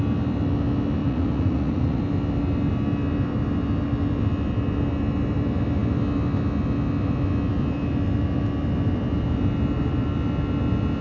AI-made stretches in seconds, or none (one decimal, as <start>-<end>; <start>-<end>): 1.0-2.0